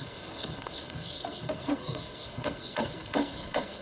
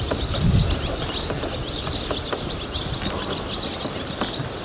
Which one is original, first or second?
second